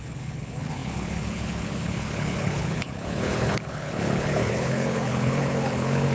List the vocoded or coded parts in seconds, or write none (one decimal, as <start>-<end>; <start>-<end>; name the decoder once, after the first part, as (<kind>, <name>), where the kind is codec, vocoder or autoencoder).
0.0-6.1 (codec, HILCodec)